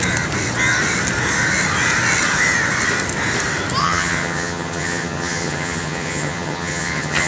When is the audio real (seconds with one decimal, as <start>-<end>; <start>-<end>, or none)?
0.0-3.8

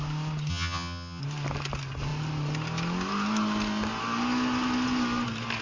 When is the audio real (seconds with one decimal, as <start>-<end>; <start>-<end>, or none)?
0.0-0.5; 1.2-5.6

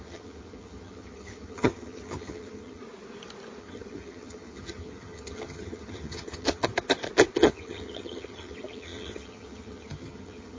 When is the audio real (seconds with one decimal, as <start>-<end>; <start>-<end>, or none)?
2.8-3.6; 6.7-7.4

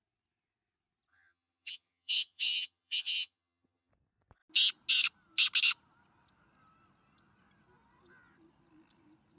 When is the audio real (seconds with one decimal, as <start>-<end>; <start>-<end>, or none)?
0.0-1.1; 3.9-9.4

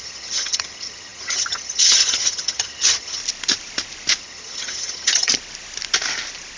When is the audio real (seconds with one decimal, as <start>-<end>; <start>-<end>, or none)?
3.2-4.2; 5.3-6.6

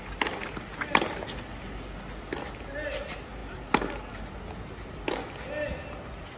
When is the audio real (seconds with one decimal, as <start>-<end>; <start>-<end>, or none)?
0.0-6.4

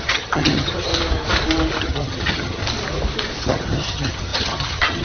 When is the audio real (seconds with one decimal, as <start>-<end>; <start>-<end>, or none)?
0.9-1.8; 2.6-3.4